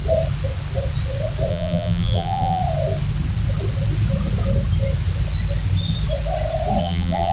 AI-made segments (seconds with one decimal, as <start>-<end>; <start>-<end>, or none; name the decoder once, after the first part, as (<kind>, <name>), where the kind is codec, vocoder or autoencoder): 1.5-2.6 (vocoder, BigVGAN v2); 6.8-7.3